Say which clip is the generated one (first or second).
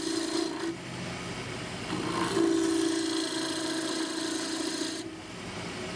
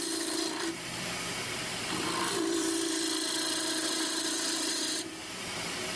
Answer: second